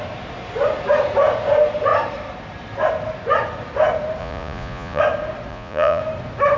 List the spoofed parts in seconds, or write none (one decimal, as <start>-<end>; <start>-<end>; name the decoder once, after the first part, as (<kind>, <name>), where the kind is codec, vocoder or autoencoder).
4.2-5.0 (vocoder, Vocos); 5.5-6.0